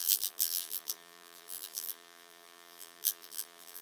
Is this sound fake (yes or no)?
yes